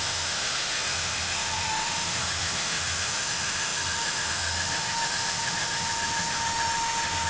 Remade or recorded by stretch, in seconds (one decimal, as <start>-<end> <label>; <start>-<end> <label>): 0.0-7.3 remade